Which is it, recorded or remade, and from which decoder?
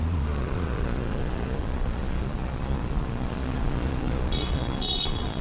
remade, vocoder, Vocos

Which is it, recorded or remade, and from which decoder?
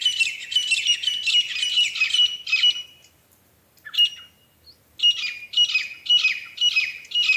recorded